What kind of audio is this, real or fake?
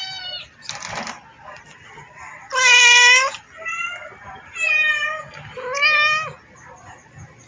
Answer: real